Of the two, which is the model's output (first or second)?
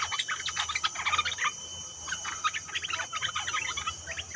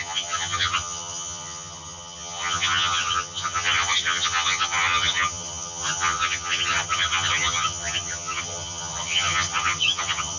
second